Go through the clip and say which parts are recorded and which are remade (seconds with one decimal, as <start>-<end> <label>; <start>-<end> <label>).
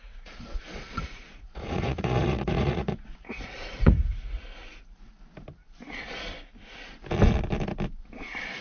0.0-4.4 remade; 4.4-8.6 recorded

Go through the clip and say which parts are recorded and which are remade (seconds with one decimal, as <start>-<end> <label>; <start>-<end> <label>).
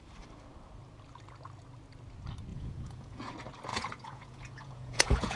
0.0-2.5 recorded; 2.5-3.3 remade; 3.3-3.7 recorded; 3.7-5.4 remade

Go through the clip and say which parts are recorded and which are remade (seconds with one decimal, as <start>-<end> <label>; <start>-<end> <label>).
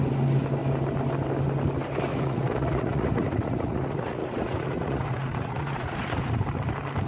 0.0-2.1 recorded; 2.1-6.4 remade; 6.4-7.1 recorded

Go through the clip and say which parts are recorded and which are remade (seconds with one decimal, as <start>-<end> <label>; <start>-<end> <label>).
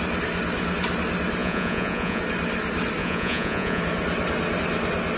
0.0-1.4 recorded; 1.4-2.2 remade; 2.2-3.0 recorded; 3.0-3.8 remade; 3.8-5.2 recorded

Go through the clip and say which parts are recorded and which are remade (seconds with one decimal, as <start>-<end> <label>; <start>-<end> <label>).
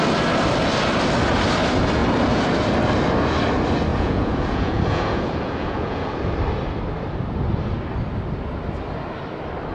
0.0-3.9 recorded; 3.9-6.3 remade; 6.3-9.7 recorded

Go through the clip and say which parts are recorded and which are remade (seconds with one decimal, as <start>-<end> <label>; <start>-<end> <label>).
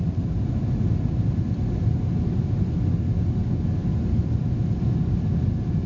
0.0-5.9 recorded